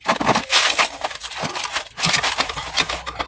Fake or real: real